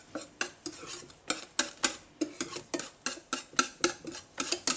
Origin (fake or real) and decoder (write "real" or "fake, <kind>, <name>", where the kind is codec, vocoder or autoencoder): real